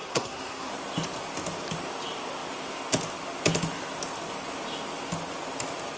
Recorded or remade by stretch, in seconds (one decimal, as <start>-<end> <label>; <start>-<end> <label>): 0.0-0.7 remade; 0.7-6.0 recorded